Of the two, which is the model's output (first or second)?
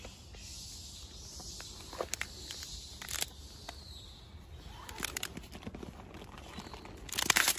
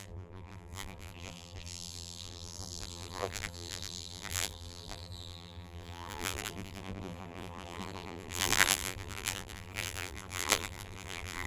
second